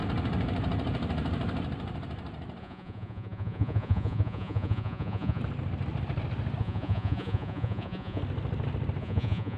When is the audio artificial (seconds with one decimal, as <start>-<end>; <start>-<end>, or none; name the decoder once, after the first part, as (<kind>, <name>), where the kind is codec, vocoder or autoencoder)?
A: 2.6-5.4 (vocoder, Vocos); 6.6-8.2; 9.0-9.6